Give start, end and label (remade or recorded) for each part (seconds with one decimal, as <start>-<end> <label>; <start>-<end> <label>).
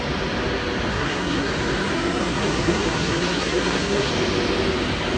0.0-0.9 recorded; 0.9-1.5 remade; 1.5-1.9 recorded; 1.9-4.1 remade; 4.1-5.2 recorded